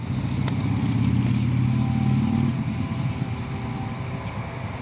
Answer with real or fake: real